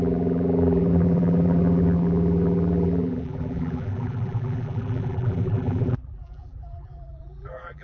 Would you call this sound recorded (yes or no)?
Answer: no